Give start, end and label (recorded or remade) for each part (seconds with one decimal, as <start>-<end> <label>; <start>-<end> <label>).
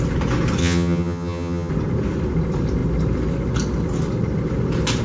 0.0-0.6 recorded; 0.6-1.7 remade; 1.7-5.0 recorded